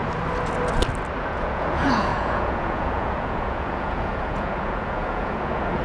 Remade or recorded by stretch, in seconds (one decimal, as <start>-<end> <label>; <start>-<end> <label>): 0.0-1.2 recorded; 1.2-5.8 remade